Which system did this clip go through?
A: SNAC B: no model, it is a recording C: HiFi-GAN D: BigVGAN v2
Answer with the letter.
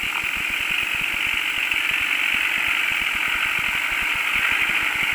D